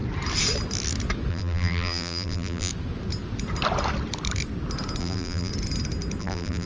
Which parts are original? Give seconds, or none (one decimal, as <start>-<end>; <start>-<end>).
0.0-1.3; 2.7-5.0; 5.5-6.2